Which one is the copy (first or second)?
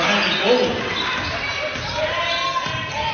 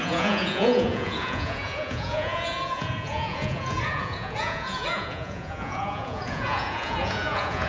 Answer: second